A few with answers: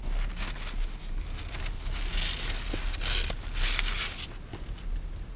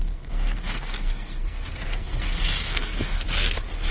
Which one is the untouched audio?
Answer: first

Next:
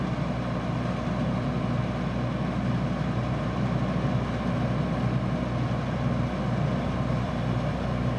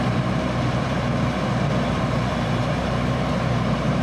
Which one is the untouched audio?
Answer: first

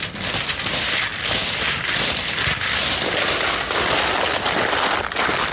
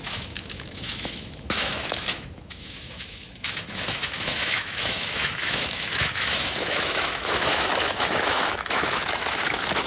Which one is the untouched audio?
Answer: first